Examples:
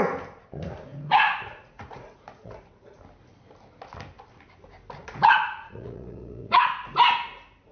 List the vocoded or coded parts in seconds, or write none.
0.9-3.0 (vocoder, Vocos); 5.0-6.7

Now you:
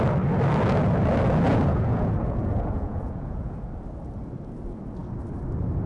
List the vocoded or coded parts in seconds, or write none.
1.5-3.6 (vocoder, Vocos)

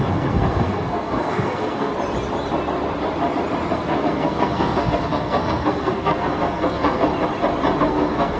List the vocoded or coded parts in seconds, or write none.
0.0-1.9 (codec, SNAC); 3.7-7.1; 7.8-8.4

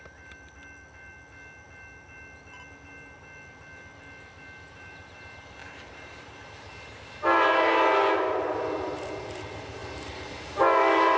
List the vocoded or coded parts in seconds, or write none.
5.6-6.7 (vocoder, BigVGAN v2); 9.8-11.2

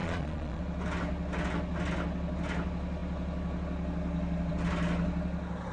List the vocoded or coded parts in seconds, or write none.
0.0-0.6 (vocoder, Vocos)

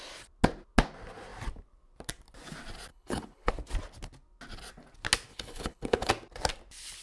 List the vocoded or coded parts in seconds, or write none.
2.9-3.5 (codec, HILCodec); 5.3-6.1

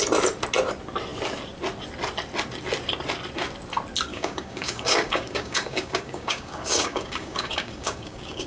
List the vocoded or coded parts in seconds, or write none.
4.1-8.5 (codec, DAC)